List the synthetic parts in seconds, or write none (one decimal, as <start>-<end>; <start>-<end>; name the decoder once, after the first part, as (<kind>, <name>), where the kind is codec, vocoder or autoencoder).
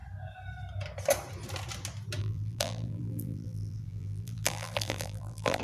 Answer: 2.2-5.6 (vocoder, BigVGAN v2)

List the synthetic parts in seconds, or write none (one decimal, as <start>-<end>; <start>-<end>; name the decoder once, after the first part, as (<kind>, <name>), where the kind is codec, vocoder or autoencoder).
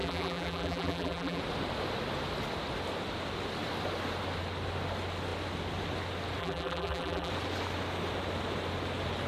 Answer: 0.0-1.4 (vocoder, BigVGAN v2); 6.4-7.3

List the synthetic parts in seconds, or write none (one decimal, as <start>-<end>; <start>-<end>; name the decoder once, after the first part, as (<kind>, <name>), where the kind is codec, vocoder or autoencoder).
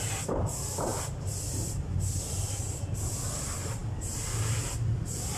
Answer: 0.0-5.4 (vocoder, BigVGAN v2)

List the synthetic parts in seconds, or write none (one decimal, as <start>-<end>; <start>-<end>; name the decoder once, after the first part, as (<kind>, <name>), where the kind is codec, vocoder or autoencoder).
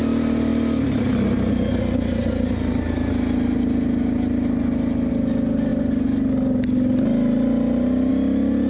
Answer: none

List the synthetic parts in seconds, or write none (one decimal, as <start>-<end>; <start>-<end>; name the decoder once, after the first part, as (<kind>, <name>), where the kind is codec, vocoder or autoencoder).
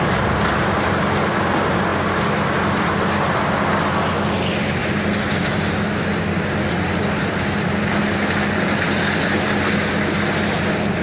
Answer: none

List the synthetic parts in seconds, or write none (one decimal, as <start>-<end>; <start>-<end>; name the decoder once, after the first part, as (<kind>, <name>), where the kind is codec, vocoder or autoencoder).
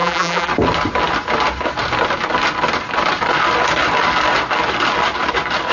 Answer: 0.0-0.5 (vocoder, BigVGAN v2)